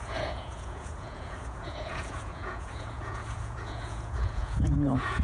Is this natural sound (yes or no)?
no